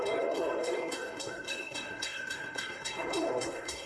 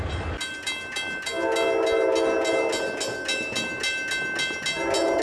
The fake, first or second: first